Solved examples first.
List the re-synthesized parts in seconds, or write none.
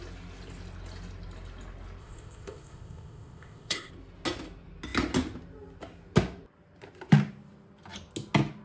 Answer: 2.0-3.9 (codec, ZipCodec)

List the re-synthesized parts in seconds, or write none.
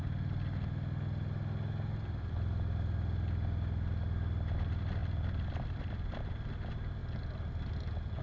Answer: none